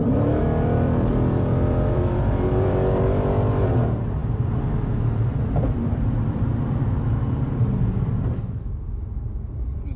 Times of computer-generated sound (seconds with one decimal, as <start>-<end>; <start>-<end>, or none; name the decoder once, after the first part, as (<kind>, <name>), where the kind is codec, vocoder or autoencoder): 0.0-10.0 (vocoder, BigVGAN v2)